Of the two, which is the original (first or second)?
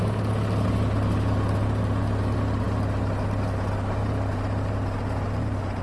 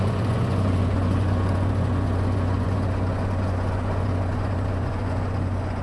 first